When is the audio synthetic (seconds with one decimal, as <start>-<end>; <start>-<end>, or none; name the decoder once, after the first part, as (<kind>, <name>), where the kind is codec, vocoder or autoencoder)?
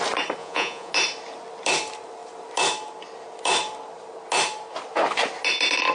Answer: 0.4-0.9 (vocoder, Vocos)